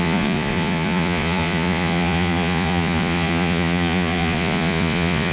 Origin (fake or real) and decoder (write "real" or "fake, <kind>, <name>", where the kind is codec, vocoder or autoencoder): fake, vocoder, Vocos